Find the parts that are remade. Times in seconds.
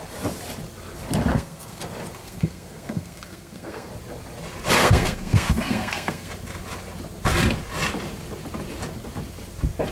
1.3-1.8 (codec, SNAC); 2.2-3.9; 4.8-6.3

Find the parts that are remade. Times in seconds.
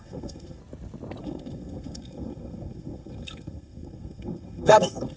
0.0-0.6 (codec, SNAC); 1.2-5.2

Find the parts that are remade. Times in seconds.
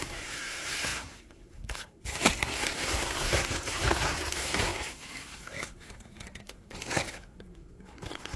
0.0-8.4 (codec, SNAC)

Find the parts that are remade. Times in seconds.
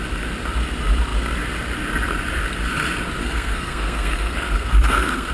3.2-5.3 (codec, SNAC)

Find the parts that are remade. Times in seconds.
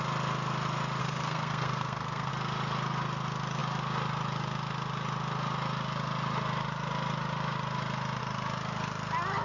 1.0-2.3 (codec, SNAC)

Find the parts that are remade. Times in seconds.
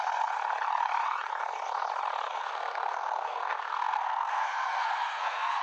2.4-5.6 (codec, SNAC)